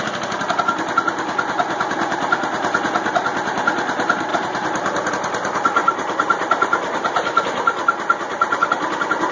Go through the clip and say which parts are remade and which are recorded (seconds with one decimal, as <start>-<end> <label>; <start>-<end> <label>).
0.0-4.3 recorded; 4.3-5.1 remade; 5.1-5.8 recorded; 5.8-7.4 remade; 7.4-9.3 recorded